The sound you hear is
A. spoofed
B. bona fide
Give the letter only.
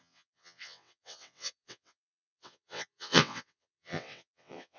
A